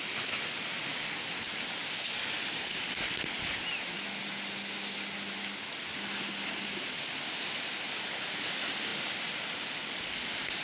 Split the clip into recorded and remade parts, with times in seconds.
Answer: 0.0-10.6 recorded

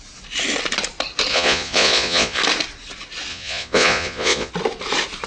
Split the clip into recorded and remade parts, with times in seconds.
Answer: 0.0-1.3 recorded; 1.3-2.4 remade; 2.4-3.3 recorded; 3.3-4.5 remade; 4.5-5.3 recorded

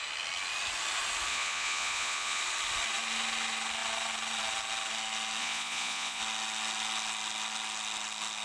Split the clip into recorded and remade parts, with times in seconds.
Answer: 0.0-1.3 recorded; 1.3-2.4 remade; 2.4-5.4 recorded; 5.4-6.2 remade; 6.2-8.4 recorded

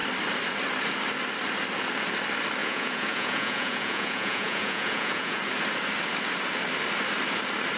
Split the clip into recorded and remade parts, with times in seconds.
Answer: 0.0-2.6 recorded; 2.6-5.4 remade; 5.4-7.8 recorded

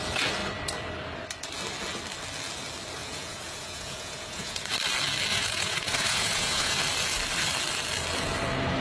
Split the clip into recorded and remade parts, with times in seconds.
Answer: 0.0-3.0 recorded; 3.0-4.7 remade; 4.7-5.3 recorded; 5.3-6.8 remade; 6.8-8.8 recorded

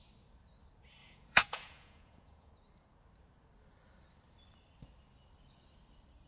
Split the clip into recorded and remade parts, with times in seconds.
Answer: 0.0-1.0 recorded; 1.0-2.5 remade; 2.5-6.3 recorded

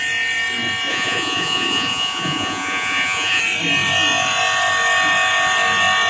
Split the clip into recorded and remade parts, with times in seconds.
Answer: 0.0-0.9 recorded; 0.9-3.4 remade; 3.4-6.1 recorded

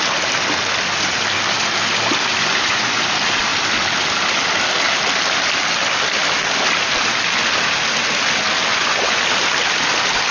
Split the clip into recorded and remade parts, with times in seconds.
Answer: 0.0-2.3 recorded; 2.3-3.0 remade; 3.0-8.7 recorded; 8.7-9.2 remade; 9.2-10.3 recorded